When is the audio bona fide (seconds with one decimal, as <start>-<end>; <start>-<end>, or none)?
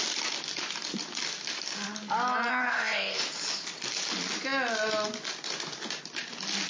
0.0-2.5; 3.2-6.7